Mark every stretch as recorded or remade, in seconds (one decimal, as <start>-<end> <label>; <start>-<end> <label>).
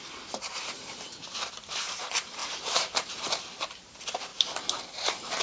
0.0-5.4 remade